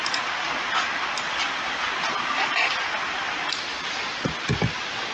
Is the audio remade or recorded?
recorded